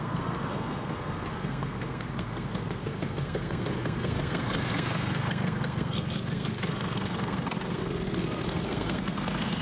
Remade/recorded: remade